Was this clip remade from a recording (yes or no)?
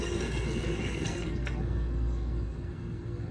yes